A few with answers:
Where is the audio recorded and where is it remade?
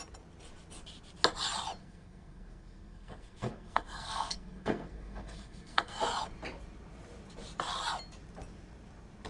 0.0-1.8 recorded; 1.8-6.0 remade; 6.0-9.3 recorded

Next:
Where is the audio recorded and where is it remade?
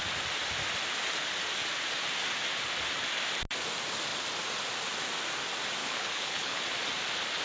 0.0-5.8 recorded; 5.8-6.6 remade; 6.6-7.4 recorded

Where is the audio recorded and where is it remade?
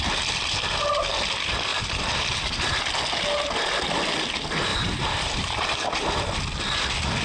0.0-1.7 recorded; 1.7-2.5 remade; 2.5-4.7 recorded; 4.7-6.0 remade; 6.0-7.2 recorded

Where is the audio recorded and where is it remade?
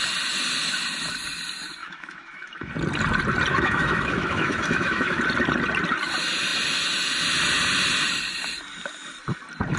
0.0-1.8 recorded; 1.8-2.7 remade; 2.7-3.5 recorded; 3.5-5.2 remade; 5.2-9.8 recorded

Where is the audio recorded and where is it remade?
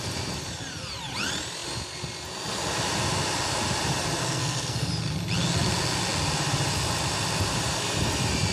0.0-4.2 recorded; 4.2-4.9 remade; 4.9-8.5 recorded